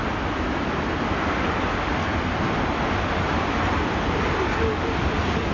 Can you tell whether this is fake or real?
real